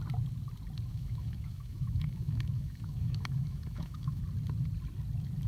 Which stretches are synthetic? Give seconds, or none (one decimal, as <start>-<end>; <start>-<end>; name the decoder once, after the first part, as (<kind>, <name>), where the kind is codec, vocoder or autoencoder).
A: 0.9-4.2 (autoencoder, DAC-VAE)